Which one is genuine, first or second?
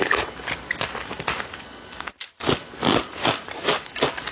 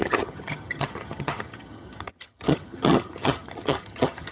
first